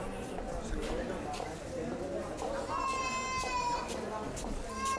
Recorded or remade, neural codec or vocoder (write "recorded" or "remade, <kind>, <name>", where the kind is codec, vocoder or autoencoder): recorded